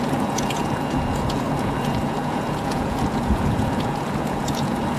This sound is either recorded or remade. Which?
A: remade